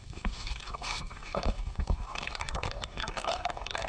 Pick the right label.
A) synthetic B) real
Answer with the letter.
A